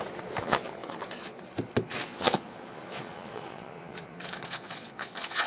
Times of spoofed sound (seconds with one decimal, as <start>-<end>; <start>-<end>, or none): 0.4-1.4; 2.1-5.5